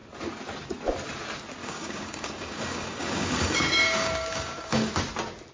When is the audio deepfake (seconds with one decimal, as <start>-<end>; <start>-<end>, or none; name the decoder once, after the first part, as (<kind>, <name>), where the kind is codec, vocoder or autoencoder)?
1.6-4.9 (codec, DAC)